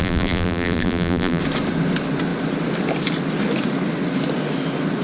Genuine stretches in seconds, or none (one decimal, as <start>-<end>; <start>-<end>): 1.4-5.0